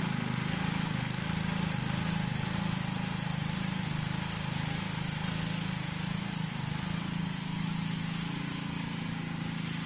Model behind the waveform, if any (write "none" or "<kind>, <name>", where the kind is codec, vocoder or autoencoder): none